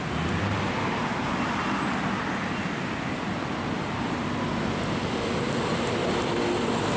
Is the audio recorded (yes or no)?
yes